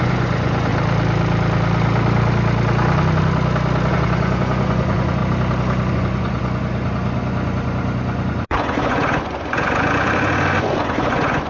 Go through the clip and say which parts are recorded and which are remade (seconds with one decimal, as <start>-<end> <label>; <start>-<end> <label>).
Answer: 0.0-0.7 remade; 0.7-3.9 recorded; 3.9-5.2 remade; 5.2-5.9 recorded; 5.9-11.5 remade